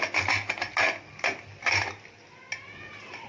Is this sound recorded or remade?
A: recorded